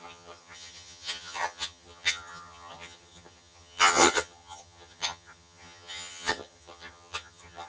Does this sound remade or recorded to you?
remade